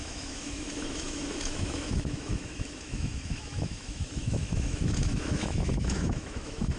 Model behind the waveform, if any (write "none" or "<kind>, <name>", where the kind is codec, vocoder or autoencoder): autoencoder, DAC-VAE